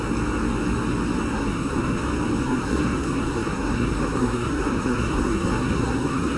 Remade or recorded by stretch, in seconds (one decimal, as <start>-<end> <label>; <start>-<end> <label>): 0.0-1.3 recorded; 1.3-2.0 remade; 2.0-2.4 recorded; 2.4-6.4 remade